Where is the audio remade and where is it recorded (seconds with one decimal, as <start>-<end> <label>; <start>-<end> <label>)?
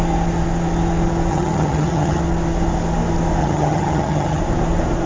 0.0-1.3 recorded; 1.3-2.2 remade; 2.2-3.4 recorded; 3.4-4.4 remade; 4.4-5.1 recorded